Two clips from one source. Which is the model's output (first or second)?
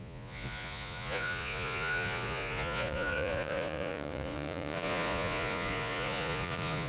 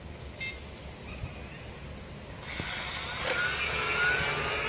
first